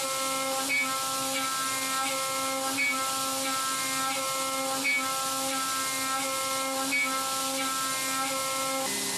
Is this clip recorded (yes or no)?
yes